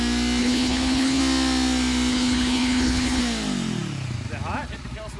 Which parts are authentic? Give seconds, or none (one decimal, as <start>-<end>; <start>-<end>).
0.0-0.4; 1.2-2.1; 3.2-5.2